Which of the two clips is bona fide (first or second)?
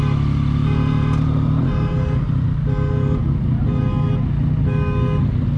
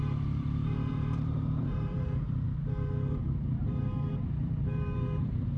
first